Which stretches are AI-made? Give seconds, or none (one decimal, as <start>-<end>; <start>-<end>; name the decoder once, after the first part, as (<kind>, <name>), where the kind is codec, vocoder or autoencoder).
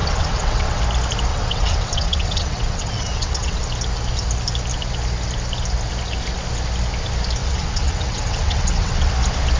0.0-0.8 (vocoder, WaveNeXt); 1.3-3.6; 7.4-9.1